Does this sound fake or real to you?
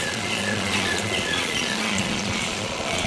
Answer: fake